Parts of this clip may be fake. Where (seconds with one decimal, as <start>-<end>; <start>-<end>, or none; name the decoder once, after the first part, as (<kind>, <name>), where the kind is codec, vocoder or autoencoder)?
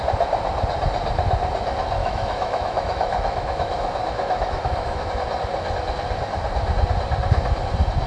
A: 2.0-5.1 (autoencoder, DAC-VAE)